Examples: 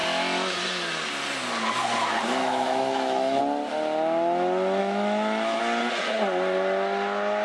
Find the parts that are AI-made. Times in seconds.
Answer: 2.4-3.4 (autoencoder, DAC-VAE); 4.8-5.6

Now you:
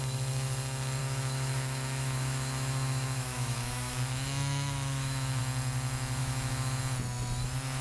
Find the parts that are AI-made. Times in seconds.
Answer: 1.0-5.4 (autoencoder, DAC-VAE); 6.2-6.8